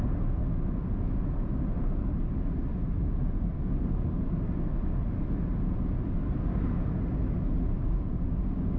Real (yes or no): yes